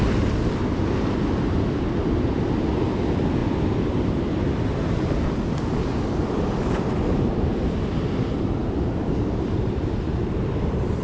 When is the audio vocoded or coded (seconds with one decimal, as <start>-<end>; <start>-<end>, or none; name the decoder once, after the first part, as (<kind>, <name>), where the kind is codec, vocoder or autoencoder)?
none